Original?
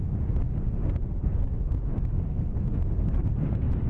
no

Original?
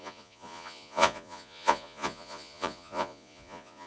no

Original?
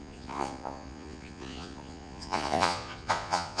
no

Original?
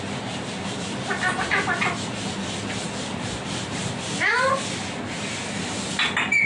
yes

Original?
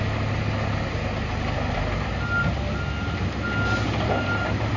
yes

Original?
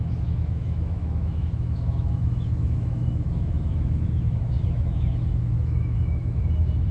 no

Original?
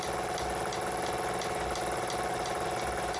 yes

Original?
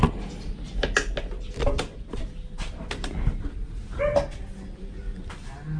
yes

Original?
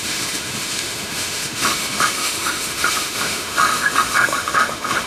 no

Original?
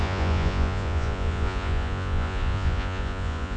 no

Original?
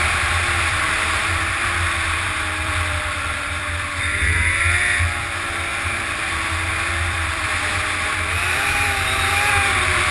no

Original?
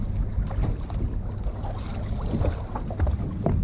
yes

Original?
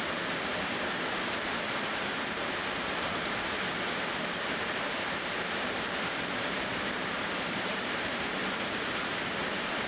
no